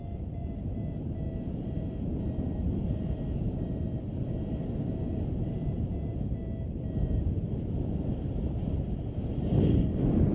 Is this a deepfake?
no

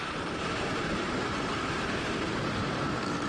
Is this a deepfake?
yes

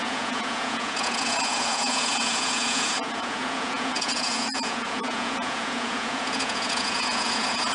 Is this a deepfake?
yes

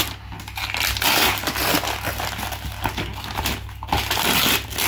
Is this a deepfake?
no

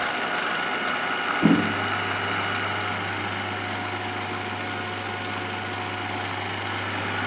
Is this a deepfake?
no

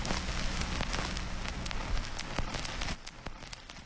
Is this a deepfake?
no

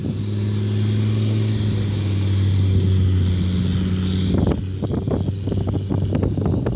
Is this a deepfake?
no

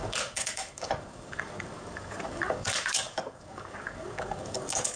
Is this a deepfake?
yes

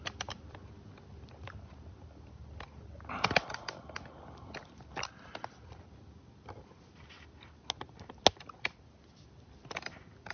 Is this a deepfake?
no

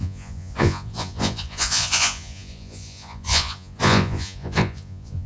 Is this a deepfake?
yes